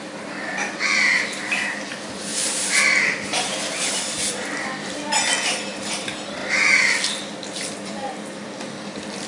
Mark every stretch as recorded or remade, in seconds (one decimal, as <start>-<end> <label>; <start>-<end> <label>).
0.0-6.4 remade; 6.4-7.3 recorded; 7.3-9.3 remade